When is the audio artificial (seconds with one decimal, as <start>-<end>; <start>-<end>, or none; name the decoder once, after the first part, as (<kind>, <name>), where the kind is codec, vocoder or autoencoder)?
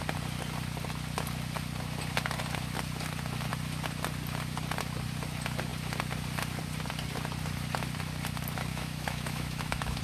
8.7-10.0 (autoencoder, DAC-VAE)